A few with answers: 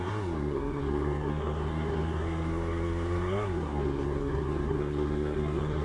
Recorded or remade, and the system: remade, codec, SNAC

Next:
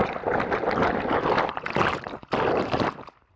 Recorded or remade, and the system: recorded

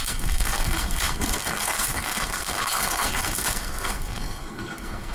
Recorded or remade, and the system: remade, codec, SNAC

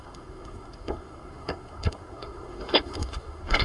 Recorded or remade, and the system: remade, codec, SNAC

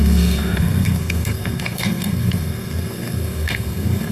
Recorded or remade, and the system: remade, codec, SNAC